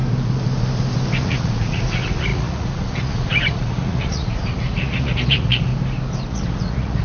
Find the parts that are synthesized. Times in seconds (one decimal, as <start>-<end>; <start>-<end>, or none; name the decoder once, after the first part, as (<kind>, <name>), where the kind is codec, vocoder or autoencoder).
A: 1.2-5.7 (vocoder, Vocos); 6.3-7.0